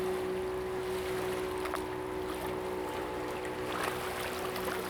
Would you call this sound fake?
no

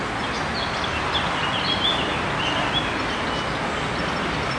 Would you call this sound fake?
no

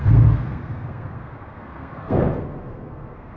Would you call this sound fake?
yes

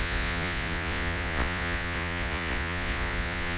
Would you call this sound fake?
yes